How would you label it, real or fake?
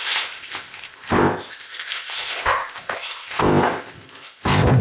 fake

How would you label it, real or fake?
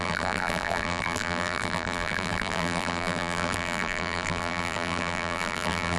fake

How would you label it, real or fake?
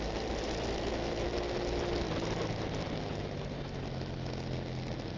real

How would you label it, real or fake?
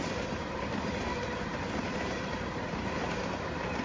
fake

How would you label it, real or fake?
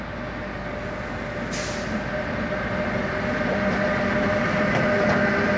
real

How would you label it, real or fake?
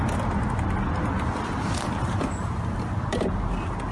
real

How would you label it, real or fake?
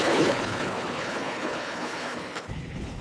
fake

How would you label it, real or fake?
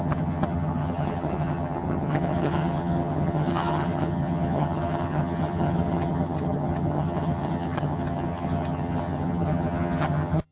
fake